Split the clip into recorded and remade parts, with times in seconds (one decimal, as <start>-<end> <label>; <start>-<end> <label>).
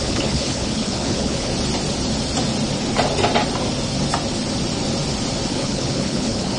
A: 0.0-1.5 remade; 1.5-5.5 recorded; 5.5-6.6 remade